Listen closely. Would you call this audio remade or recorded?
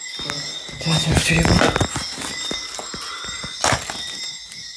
recorded